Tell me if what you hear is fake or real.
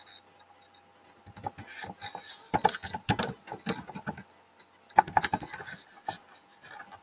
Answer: real